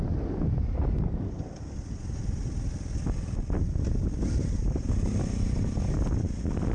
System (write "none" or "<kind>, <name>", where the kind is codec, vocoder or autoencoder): none